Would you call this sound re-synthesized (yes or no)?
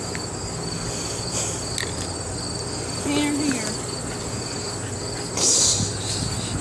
no